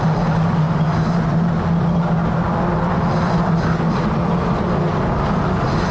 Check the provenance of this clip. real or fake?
real